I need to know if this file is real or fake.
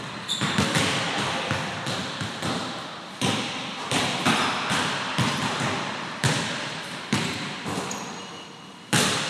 fake